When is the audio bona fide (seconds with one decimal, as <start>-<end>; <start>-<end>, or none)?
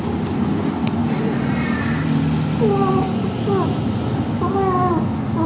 0.0-1.0; 2.9-5.5